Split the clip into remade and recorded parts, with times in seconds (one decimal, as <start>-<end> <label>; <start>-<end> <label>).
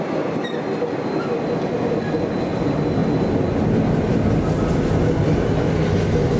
0.0-6.4 recorded